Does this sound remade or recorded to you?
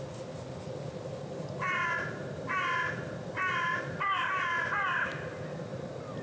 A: recorded